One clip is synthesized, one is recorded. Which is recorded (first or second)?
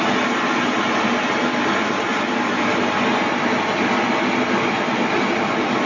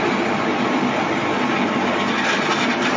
first